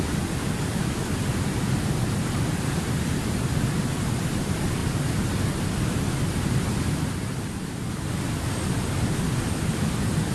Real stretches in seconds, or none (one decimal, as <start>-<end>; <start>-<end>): 0.0-10.3